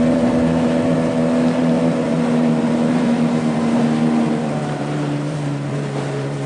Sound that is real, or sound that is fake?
fake